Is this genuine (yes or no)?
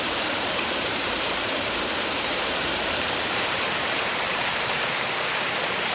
no